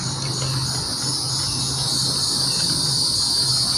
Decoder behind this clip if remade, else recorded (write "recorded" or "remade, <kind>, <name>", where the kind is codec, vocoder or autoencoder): recorded